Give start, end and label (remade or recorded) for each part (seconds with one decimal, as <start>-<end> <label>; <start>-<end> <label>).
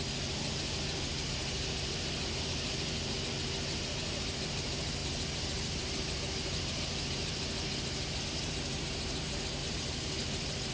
0.0-9.6 recorded; 9.6-10.1 remade; 10.1-10.7 recorded